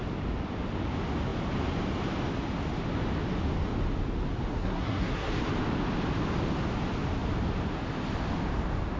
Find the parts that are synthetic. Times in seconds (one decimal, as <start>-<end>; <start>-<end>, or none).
4.5-5.3